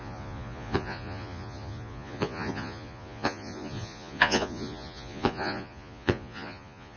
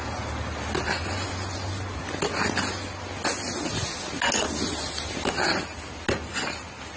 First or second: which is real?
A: second